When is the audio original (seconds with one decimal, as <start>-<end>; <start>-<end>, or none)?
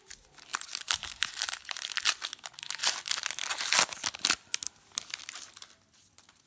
0.0-6.5